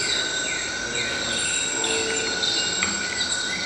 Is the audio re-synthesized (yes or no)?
no